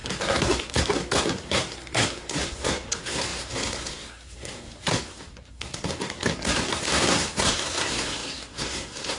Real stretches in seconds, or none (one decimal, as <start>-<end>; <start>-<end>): none